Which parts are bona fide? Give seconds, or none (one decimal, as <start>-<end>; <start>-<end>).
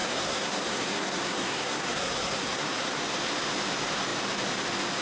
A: 3.0-5.0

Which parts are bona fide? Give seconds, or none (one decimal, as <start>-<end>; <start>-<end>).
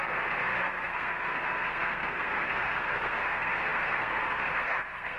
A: none